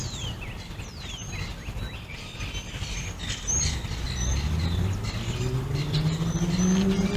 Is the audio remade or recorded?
recorded